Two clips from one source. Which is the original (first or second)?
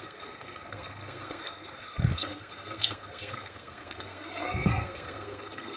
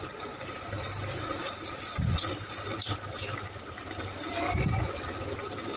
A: second